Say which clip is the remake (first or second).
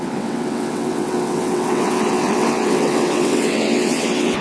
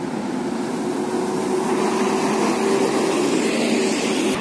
first